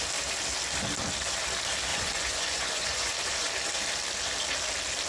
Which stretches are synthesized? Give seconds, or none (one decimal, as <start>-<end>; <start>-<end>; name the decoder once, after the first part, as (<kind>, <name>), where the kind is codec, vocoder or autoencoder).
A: 1.9-3.5 (vocoder, Vocos)